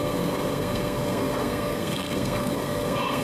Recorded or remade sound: remade